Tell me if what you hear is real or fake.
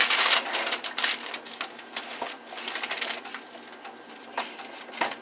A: real